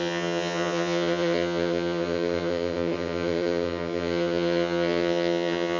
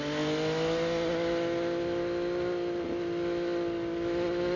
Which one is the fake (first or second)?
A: first